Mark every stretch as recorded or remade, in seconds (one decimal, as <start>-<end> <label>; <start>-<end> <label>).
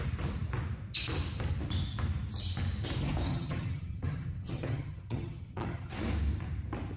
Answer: 0.0-3.3 recorded; 3.3-5.9 remade; 5.9-7.0 recorded